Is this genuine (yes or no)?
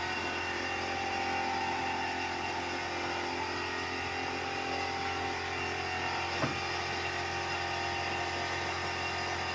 yes